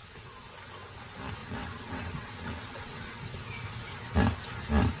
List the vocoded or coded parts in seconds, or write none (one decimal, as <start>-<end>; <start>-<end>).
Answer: 1.4-3.2

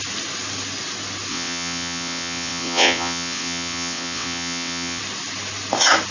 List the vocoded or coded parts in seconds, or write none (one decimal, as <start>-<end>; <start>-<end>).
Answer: 1.3-5.0

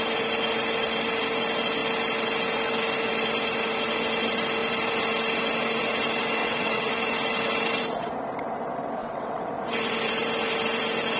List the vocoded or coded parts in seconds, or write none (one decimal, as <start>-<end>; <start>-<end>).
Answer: 6.4-6.9; 9.0-9.5

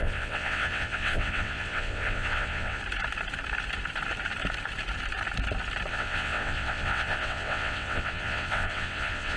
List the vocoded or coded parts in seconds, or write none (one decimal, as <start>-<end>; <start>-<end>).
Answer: 0.0-2.8; 5.9-9.4